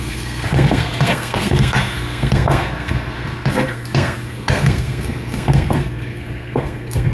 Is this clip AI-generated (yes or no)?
yes